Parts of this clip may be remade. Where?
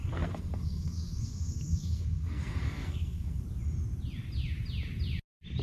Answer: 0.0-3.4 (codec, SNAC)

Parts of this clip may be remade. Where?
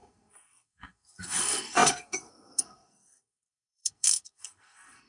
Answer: 0.0-5.1 (codec, SNAC)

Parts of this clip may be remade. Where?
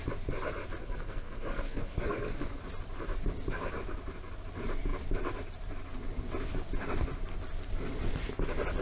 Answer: 0.8-2.6 (codec, SNAC)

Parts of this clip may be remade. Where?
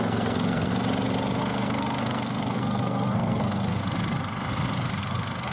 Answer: 0.0-0.7 (codec, SNAC); 1.4-3.8; 5.0-5.5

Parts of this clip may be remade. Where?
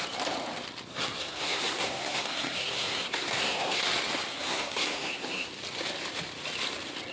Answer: 0.9-3.8 (codec, SNAC); 4.3-5.5